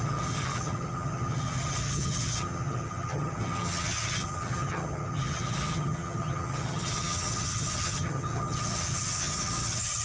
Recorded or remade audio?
remade